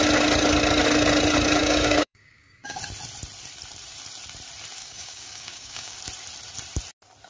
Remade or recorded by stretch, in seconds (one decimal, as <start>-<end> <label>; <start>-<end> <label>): 0.0-1.6 recorded; 1.6-2.8 remade; 2.8-4.8 recorded; 4.8-6.0 remade; 6.0-7.3 recorded